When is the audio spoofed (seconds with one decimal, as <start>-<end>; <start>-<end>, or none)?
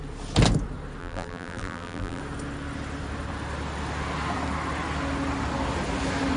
1.0-2.2